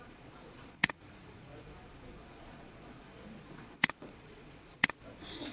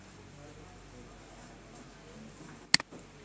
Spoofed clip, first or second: first